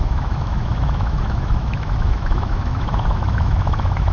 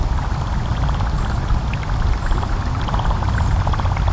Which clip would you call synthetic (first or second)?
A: first